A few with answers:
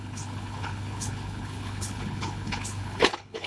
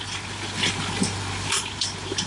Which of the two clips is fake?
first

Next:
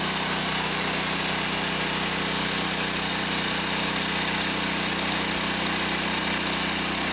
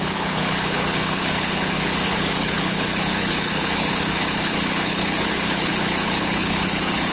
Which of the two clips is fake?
second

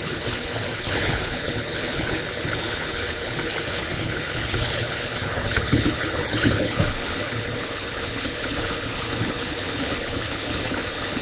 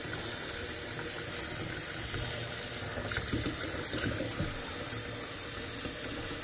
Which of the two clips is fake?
first